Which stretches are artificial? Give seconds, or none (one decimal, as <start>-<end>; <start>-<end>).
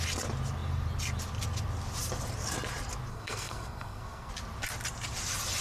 3.1-4.3